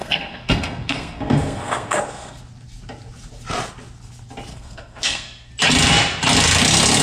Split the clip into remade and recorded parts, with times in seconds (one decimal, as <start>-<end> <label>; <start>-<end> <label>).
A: 0.0-2.4 remade; 2.4-4.5 recorded; 4.5-5.5 remade; 5.5-7.0 recorded